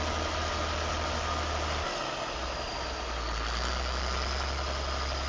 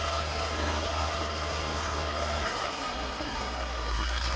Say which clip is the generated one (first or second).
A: second